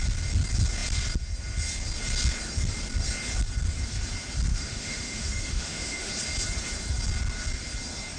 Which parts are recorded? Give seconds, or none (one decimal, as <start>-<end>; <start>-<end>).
0.0-4.5; 6.1-8.2